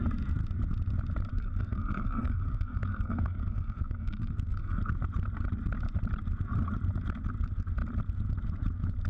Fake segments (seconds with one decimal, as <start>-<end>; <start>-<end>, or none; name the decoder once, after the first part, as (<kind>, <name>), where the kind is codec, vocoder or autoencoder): 1.3-4.8 (codec, SNAC)